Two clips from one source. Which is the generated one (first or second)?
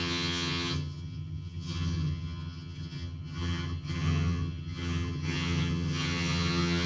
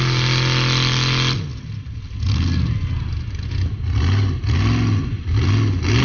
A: first